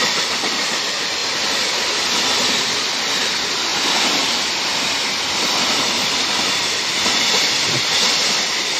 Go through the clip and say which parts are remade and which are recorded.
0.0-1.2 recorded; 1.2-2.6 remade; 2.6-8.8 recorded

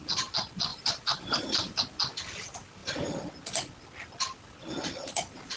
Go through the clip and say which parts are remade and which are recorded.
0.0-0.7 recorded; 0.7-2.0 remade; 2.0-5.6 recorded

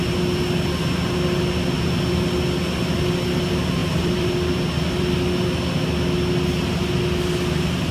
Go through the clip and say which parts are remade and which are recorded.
0.0-3.8 recorded; 3.8-4.3 remade; 4.3-7.9 recorded

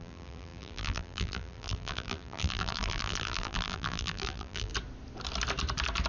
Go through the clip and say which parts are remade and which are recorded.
0.0-4.7 remade; 4.7-6.1 recorded